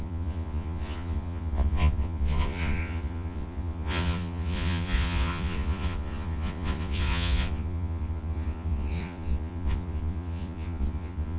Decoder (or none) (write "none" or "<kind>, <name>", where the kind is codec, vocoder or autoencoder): vocoder, Vocos